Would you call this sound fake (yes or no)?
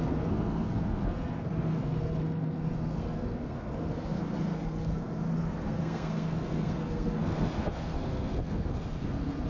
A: yes